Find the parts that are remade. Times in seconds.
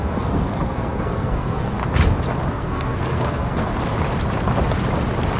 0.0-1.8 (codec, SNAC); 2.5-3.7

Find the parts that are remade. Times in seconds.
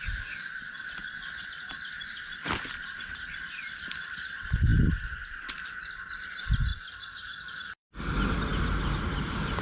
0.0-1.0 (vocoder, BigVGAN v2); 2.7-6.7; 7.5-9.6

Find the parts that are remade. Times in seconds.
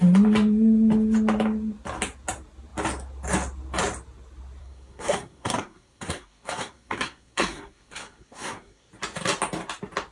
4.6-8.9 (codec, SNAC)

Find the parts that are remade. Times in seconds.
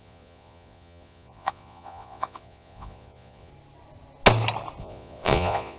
0.0-3.5 (vocoder, Vocos); 4.8-5.8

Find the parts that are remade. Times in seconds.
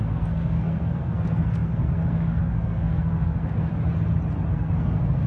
0.0-3.7 (codec, SNAC); 4.5-5.3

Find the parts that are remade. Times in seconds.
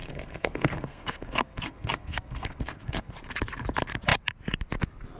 0.0-3.1 (codec, SNAC)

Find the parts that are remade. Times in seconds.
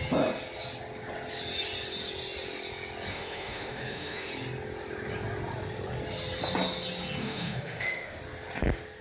3.1-4.3 (autoencoder, DAC-VAE); 7.2-8.2